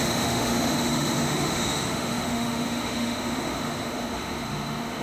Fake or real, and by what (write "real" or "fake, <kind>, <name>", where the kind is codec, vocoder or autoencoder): fake, autoencoder, DAC-VAE